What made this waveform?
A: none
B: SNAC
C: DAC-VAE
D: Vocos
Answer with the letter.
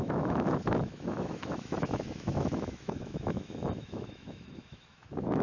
C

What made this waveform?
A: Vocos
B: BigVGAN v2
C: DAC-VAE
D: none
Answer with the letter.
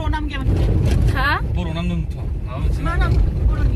B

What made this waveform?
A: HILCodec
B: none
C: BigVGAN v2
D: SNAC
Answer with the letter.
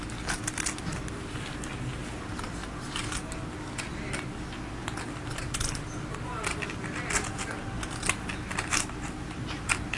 B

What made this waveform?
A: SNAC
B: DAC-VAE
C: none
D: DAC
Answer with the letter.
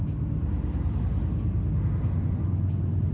C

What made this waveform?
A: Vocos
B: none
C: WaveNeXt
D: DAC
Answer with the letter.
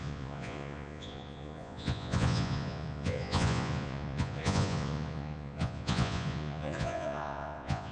A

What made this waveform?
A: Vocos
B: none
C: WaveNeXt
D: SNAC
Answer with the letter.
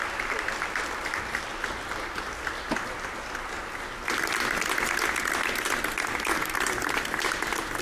B